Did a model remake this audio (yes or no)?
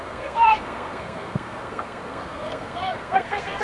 yes